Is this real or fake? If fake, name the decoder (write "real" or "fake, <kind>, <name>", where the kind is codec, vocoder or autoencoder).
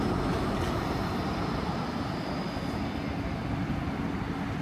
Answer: real